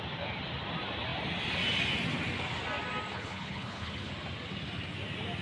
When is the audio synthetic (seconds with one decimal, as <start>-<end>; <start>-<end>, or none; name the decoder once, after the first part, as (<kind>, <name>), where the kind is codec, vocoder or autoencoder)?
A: 3.1-4.1 (codec, HILCodec)